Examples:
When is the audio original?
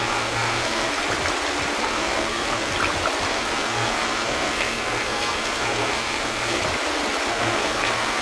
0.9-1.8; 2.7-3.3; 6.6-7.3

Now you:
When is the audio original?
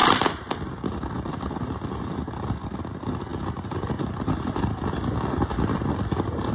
0.0-6.5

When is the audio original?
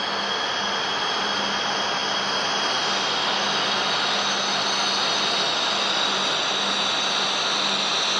0.0-8.2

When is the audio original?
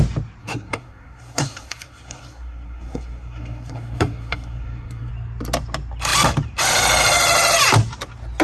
0.0-0.4; 5.1-8.4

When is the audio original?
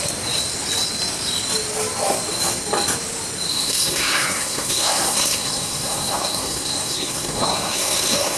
0.0-3.5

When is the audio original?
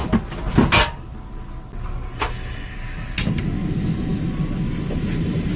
0.0-5.6